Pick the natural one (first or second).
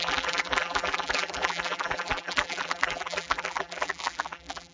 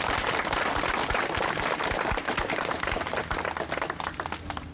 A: second